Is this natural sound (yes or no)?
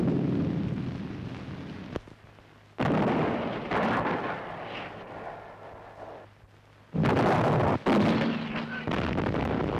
yes